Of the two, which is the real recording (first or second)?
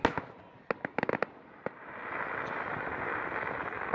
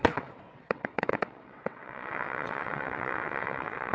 first